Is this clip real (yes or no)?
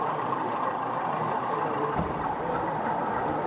no